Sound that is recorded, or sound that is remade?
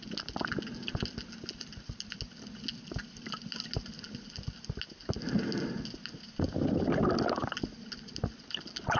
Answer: recorded